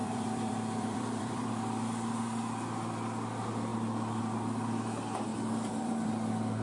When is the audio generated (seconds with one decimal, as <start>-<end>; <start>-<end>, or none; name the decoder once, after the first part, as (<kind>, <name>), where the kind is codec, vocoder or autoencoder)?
0.0-1.5 (vocoder, BigVGAN v2); 3.7-4.2; 5.3-6.1